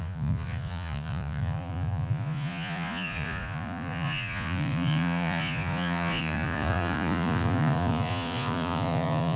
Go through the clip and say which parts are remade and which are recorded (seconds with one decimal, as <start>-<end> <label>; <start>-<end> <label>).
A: 0.0-9.4 remade